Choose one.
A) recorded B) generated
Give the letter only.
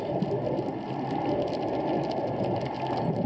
A